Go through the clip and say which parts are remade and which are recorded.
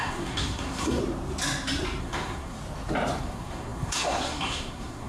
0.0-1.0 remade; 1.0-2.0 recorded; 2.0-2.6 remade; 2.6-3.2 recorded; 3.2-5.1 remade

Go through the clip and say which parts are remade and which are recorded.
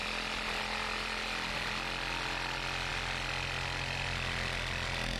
0.0-5.2 recorded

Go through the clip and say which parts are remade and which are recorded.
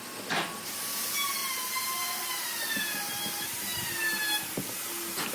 0.0-1.4 recorded; 1.4-3.9 remade; 3.9-5.3 recorded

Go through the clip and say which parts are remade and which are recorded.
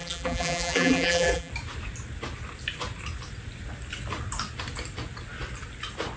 0.0-1.5 remade; 1.5-6.2 recorded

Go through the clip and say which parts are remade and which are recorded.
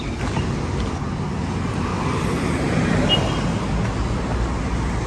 0.0-5.1 recorded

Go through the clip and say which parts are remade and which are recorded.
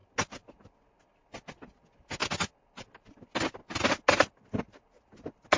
0.0-5.6 recorded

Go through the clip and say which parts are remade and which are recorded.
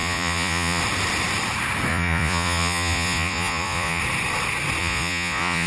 0.0-0.8 remade; 0.8-1.9 recorded; 1.9-4.0 remade; 4.0-4.8 recorded; 4.8-5.7 remade